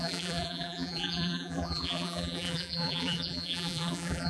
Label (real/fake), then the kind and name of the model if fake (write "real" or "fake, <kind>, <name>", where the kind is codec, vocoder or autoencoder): fake, vocoder, BigVGAN v2